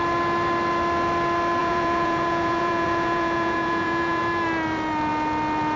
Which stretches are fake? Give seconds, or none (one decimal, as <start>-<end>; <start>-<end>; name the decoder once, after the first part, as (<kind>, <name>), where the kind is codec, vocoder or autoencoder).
1.6-4.2 (vocoder, Vocos)